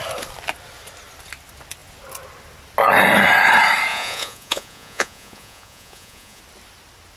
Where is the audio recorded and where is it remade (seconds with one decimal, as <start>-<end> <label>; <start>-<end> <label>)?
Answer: 0.0-3.9 recorded; 3.9-6.4 remade; 6.4-7.2 recorded